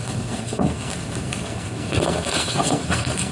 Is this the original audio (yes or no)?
no